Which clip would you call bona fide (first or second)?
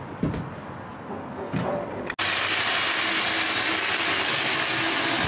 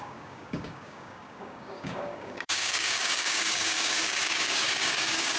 first